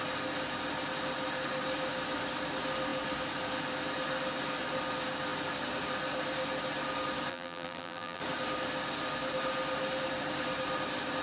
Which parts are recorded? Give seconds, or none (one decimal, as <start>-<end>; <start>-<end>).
0.0-7.3; 8.2-11.2